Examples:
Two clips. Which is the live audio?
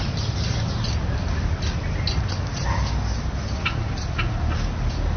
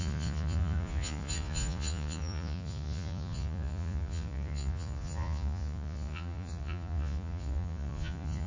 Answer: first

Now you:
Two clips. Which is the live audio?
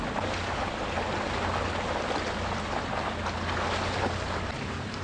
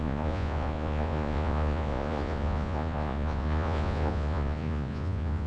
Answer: first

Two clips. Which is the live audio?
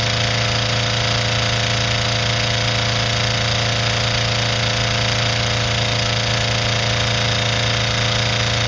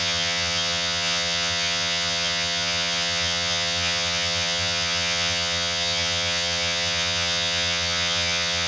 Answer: first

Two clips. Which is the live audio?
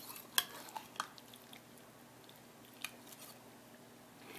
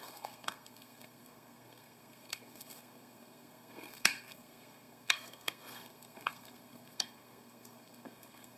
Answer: first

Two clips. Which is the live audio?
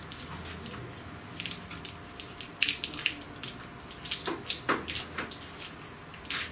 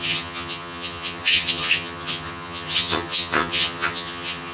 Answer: first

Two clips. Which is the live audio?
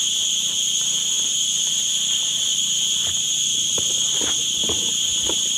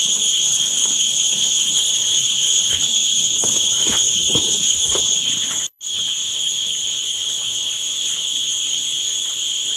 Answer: first